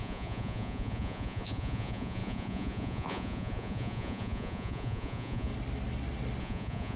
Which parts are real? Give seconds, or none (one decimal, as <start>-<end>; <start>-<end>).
5.5-6.4